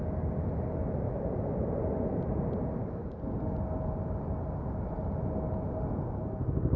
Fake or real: real